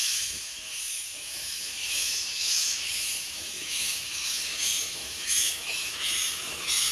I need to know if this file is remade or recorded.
remade